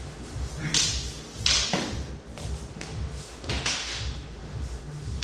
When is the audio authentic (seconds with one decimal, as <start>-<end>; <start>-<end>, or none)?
0.5-2.7